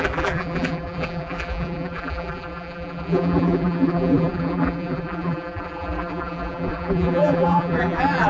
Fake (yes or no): yes